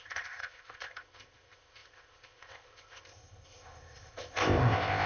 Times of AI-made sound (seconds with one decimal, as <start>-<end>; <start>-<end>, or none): 0.0-5.1